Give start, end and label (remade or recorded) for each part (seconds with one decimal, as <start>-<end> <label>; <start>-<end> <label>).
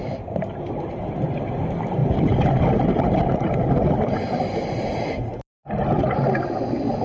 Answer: 0.0-7.0 recorded